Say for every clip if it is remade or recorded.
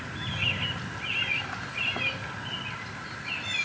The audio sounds recorded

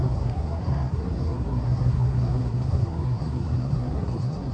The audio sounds remade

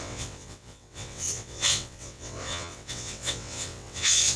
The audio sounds remade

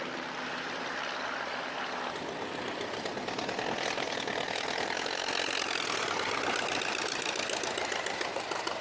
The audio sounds recorded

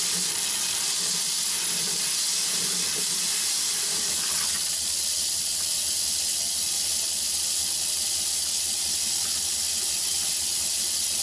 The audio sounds recorded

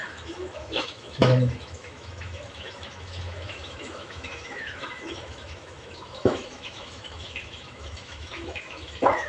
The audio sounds remade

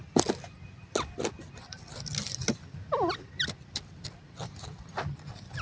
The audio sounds recorded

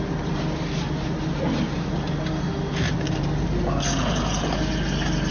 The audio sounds recorded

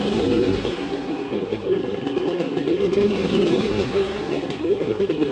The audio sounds remade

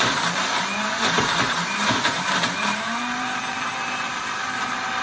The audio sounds remade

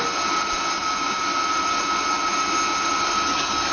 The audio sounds recorded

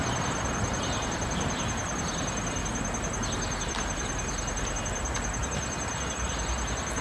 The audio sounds recorded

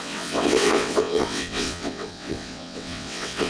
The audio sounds remade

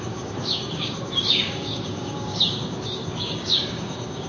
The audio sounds remade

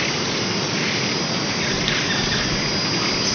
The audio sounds recorded